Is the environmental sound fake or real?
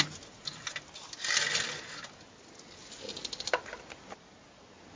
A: real